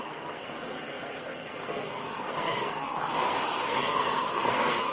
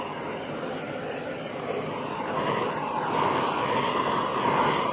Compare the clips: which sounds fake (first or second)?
first